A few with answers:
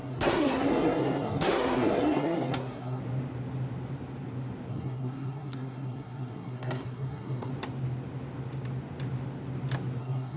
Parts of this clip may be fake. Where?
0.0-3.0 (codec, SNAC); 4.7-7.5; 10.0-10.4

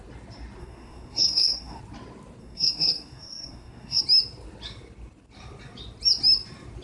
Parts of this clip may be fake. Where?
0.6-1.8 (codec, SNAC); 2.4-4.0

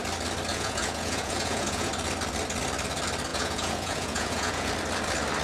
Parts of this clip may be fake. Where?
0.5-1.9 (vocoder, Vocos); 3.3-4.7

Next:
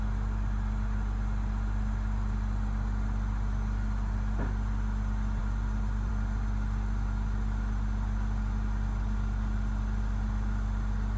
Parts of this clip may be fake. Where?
none

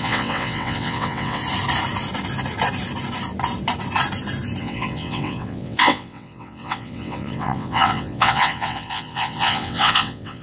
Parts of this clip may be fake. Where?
0.0-1.4 (vocoder, WaveNeXt); 4.6-10.4

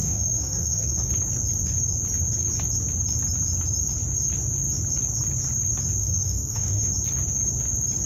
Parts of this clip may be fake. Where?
0.0-1.1 (codec, DAC); 6.0-6.9